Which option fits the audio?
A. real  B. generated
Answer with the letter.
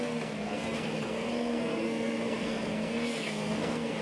B